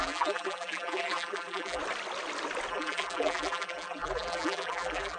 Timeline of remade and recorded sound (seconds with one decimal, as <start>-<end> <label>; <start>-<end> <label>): 0.0-1.8 remade; 1.8-2.7 recorded; 2.7-5.2 remade